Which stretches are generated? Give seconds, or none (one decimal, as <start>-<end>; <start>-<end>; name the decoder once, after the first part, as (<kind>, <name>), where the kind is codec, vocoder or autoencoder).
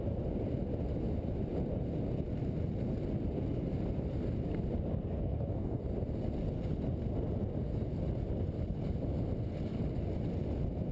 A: 5.2-5.8 (codec, DAC)